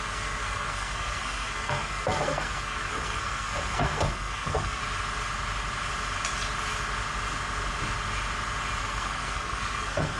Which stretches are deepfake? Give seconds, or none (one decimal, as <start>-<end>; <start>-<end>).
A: 0.0-4.8; 8.8-10.2